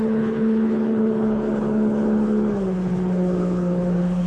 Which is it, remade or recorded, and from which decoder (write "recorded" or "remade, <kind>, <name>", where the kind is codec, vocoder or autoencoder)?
remade, codec, HILCodec